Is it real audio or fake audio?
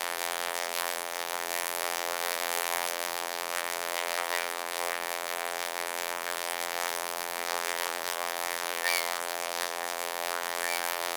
fake